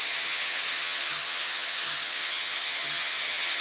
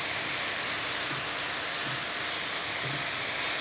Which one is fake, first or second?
first